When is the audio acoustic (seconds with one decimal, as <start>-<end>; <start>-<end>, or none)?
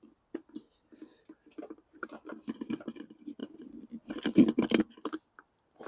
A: 0.0-5.9